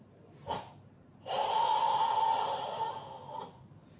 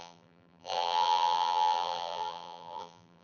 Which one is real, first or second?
first